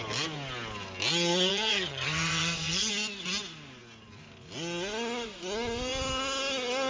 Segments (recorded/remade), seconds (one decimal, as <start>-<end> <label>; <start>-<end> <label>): 0.0-1.5 recorded; 1.5-2.9 remade; 2.9-6.9 recorded